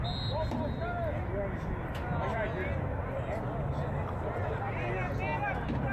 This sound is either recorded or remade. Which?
recorded